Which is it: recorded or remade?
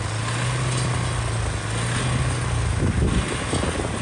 recorded